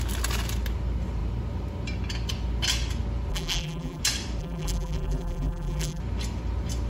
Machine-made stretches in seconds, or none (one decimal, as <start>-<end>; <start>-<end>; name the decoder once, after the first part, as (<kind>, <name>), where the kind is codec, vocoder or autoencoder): 3.3-4.0 (vocoder, BigVGAN v2); 4.4-6.0